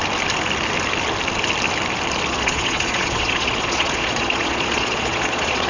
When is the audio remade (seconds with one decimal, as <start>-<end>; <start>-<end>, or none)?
2.3-5.7